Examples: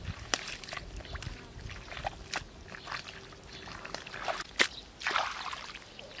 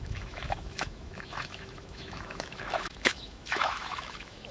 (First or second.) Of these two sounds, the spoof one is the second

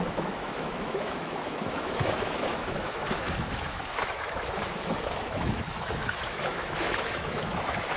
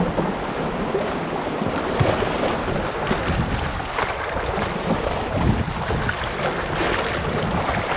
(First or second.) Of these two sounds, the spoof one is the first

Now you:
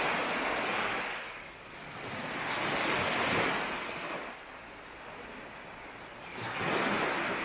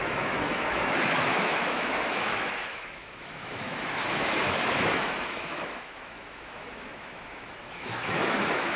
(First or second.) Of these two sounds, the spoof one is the second